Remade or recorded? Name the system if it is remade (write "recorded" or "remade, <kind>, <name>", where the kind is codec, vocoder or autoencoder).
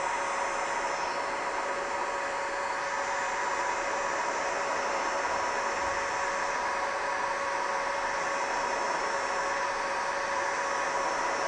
recorded